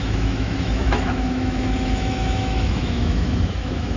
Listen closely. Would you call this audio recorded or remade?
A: remade